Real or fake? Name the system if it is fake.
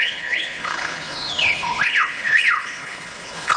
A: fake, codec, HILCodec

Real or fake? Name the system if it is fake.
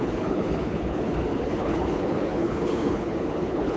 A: fake, codec, HILCodec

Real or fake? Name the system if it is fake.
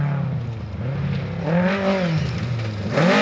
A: real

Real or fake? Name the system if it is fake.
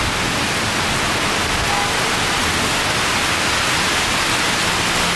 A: real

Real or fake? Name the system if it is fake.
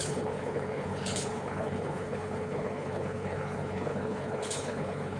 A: fake, codec, HILCodec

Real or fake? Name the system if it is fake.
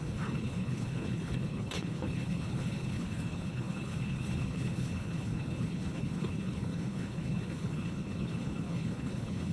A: fake, codec, HILCodec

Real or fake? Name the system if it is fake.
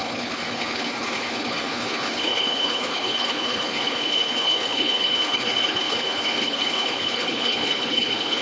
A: fake, codec, HILCodec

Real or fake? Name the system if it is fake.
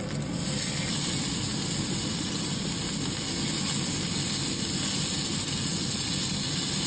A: real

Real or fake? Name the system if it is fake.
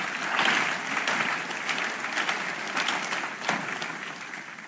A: real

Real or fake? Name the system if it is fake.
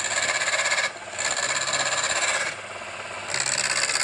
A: real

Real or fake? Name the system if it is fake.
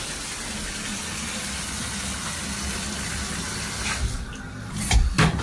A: real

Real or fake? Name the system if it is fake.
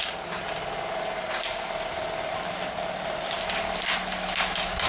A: real